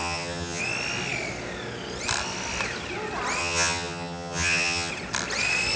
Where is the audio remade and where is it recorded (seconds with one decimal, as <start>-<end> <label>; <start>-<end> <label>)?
0.0-0.6 remade; 0.6-3.4 recorded; 3.4-4.9 remade; 4.9-5.8 recorded